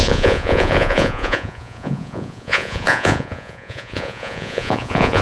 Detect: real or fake fake